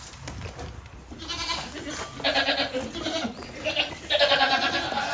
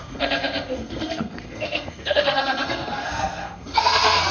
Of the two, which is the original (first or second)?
first